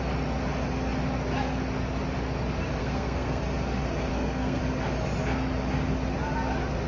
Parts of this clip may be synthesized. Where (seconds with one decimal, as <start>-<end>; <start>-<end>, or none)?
2.8-3.4; 4.1-4.6